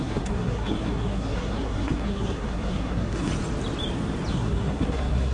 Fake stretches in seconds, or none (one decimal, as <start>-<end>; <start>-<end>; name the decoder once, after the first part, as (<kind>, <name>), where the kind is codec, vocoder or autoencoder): 0.0-3.3 (codec, SNAC); 4.3-5.3